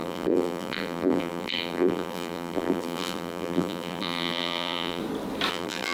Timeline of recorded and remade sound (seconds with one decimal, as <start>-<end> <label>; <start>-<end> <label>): 0.0-5.0 remade; 5.0-5.5 recorded; 5.5-5.9 remade